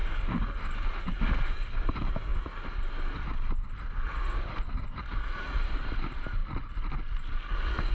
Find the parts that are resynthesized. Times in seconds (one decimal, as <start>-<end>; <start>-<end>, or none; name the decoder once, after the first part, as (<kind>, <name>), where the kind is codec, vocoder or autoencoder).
none

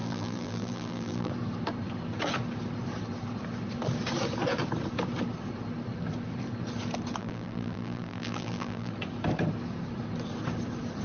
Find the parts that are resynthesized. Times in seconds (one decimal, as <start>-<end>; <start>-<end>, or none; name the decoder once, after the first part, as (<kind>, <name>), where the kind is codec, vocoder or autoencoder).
0.0-1.3 (vocoder, BigVGAN v2); 7.2-8.9

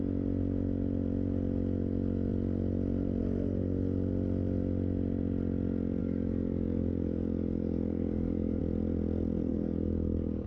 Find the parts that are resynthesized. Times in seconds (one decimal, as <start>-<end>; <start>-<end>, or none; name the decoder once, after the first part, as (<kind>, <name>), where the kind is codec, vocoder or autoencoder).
6.0-8.6 (codec, DAC); 9.5-10.5

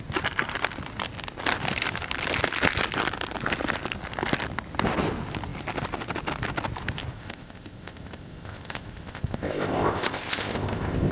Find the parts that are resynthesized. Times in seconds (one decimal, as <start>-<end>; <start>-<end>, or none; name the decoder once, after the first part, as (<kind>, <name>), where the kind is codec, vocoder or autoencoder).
7.1-11.1 (codec, ZipCodec)

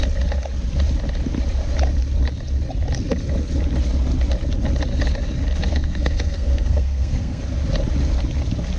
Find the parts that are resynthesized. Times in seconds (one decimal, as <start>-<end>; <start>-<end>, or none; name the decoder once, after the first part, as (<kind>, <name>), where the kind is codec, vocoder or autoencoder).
5.7-7.4 (codec, SNAC)

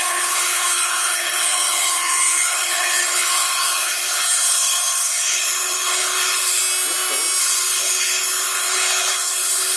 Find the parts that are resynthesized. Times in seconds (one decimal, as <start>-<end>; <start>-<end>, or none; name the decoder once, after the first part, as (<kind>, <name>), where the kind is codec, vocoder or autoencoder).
0.0-6.6 (codec, HILCodec); 7.4-9.8

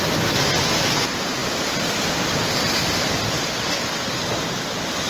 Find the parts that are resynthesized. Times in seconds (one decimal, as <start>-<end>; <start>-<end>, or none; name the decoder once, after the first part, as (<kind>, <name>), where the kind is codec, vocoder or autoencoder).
none

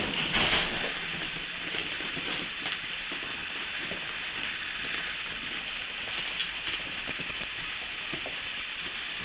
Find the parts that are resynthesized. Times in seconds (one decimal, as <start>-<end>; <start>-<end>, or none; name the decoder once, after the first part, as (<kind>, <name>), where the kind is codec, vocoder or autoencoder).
none